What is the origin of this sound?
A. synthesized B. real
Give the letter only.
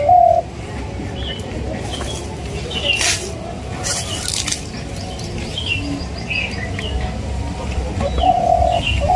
B